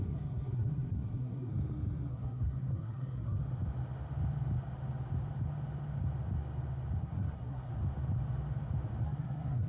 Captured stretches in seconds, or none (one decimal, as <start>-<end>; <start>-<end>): 1.5-2.1; 3.4-7.0; 7.7-9.0